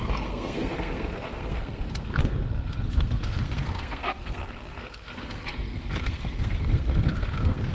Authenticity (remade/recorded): remade